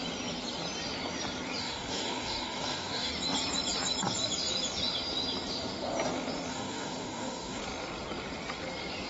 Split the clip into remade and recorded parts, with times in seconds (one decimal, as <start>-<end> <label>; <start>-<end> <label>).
0.0-1.6 recorded; 1.6-3.1 remade; 3.1-6.5 recorded; 6.5-7.6 remade; 7.6-9.1 recorded